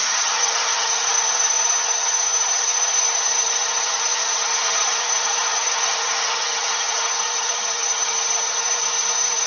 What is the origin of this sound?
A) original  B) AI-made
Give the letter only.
B